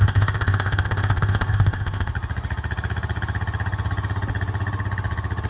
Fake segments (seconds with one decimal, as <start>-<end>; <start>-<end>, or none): 0.0-2.1